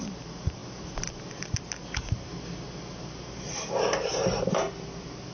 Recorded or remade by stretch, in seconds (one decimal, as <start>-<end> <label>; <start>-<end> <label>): 0.0-5.3 recorded